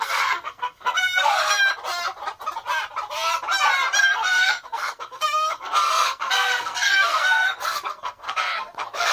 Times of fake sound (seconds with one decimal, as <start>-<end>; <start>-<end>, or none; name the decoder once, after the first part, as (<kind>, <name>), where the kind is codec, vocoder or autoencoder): 0.0-1.6 (codec, SNAC); 4.0-9.1

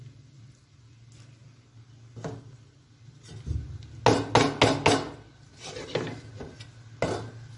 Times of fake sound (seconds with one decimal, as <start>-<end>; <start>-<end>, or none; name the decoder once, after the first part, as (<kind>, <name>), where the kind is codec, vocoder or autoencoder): none